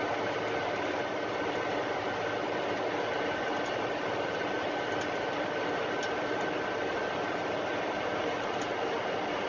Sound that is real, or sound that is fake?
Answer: real